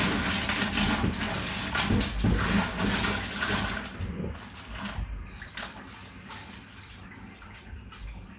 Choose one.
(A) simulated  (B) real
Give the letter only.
B